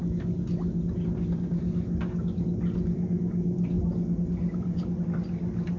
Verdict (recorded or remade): recorded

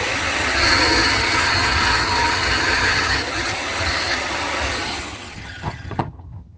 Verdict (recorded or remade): remade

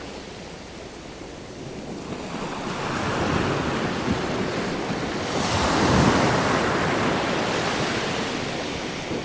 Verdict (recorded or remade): recorded